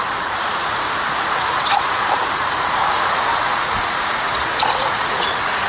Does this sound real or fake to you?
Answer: fake